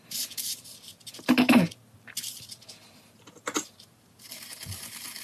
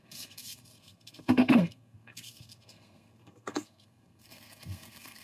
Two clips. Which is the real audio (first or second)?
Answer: first